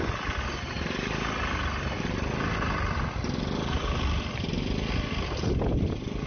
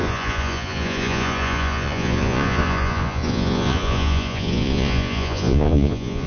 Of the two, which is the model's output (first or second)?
second